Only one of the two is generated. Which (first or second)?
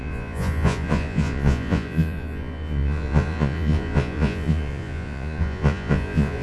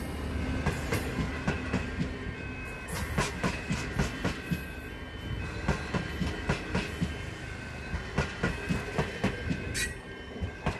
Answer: first